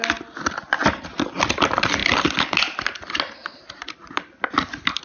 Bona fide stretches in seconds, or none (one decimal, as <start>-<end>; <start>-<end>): 0.0-5.0